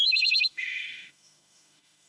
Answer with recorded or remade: remade